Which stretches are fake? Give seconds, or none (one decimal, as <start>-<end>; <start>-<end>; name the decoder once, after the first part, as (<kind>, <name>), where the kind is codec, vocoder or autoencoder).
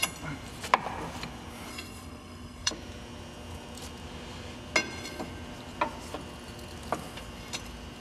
1.7-2.7 (codec, SNAC)